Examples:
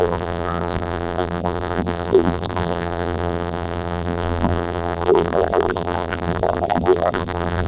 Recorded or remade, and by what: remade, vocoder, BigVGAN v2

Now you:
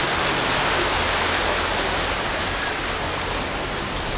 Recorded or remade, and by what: recorded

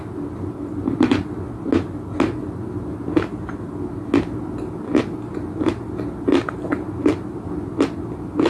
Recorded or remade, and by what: recorded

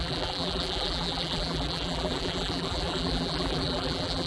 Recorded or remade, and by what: remade, vocoder, BigVGAN v2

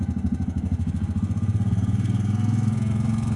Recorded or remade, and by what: remade, codec, SNAC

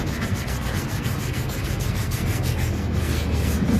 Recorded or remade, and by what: remade, codec, SNAC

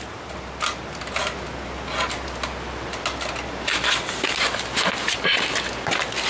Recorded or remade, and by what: recorded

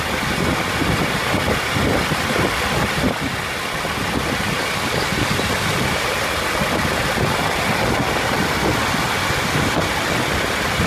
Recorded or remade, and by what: recorded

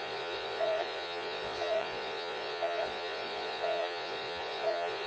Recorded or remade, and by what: remade, vocoder, Vocos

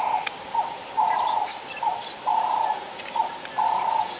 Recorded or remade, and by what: recorded